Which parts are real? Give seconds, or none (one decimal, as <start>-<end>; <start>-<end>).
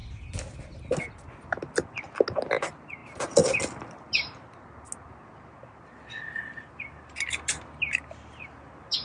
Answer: 0.0-9.0